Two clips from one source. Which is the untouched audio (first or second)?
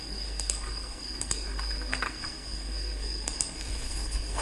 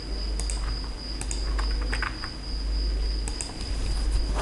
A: second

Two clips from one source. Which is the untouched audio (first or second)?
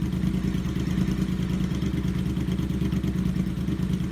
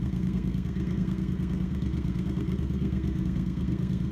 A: first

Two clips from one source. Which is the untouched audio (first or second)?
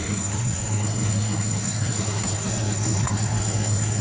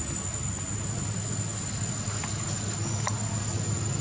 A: second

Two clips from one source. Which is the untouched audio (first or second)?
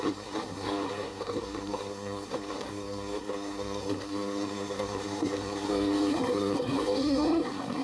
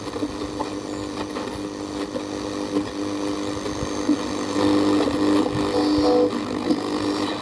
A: second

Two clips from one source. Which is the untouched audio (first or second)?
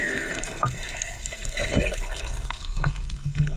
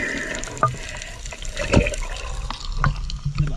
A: second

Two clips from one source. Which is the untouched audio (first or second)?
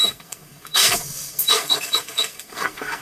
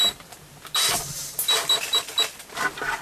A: second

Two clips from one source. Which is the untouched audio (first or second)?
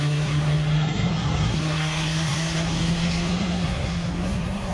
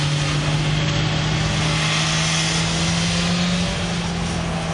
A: second